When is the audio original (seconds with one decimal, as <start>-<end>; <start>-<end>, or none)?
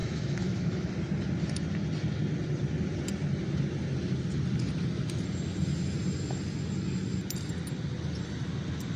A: 0.9-9.0